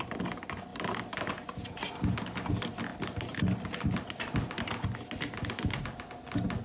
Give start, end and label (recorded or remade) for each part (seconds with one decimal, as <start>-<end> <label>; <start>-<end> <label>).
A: 0.0-6.6 recorded